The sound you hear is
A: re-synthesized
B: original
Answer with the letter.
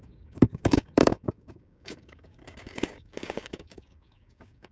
A